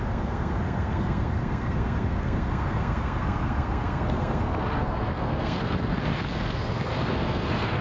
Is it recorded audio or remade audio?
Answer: remade